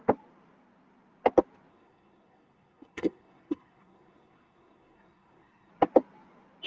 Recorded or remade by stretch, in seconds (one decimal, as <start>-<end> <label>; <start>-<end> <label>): 0.0-1.7 recorded; 1.7-5.7 remade; 5.7-6.7 recorded